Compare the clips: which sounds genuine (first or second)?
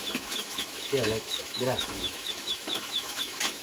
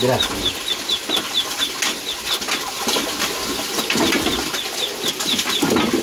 second